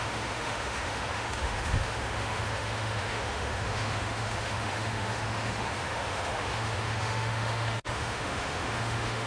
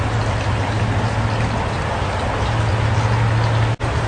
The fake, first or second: first